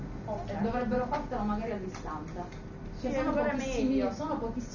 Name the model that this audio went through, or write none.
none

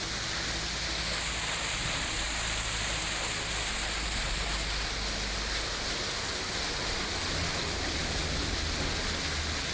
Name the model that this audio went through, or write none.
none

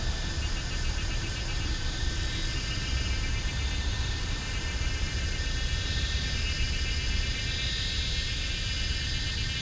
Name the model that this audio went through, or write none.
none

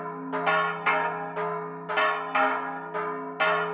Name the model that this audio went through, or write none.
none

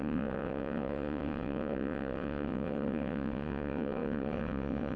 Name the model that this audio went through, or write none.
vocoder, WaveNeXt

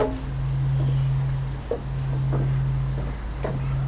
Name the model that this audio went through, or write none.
none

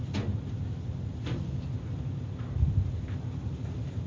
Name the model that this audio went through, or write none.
none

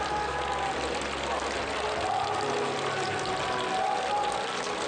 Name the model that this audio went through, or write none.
none